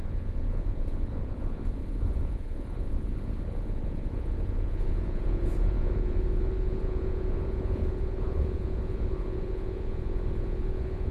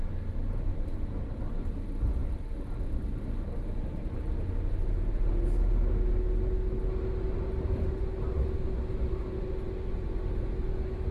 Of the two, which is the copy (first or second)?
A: first